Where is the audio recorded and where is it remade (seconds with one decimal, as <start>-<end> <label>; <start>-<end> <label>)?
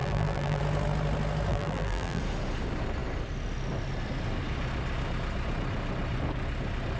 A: 0.0-0.6 remade; 0.6-1.5 recorded; 1.5-2.2 remade; 2.2-7.0 recorded